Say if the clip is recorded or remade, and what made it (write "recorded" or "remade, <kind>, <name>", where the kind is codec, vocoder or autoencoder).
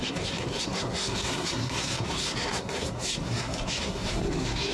remade, codec, SNAC